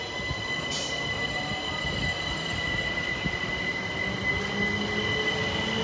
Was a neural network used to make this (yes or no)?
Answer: no